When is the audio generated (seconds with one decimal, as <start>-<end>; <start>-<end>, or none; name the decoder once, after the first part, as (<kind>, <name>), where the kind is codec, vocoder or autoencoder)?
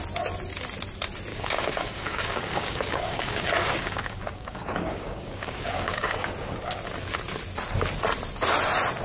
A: 1.3-6.3 (codec, DAC)